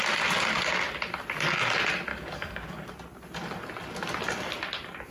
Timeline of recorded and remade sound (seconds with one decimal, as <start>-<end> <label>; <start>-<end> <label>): 0.0-2.1 recorded; 2.1-2.9 remade; 2.9-5.1 recorded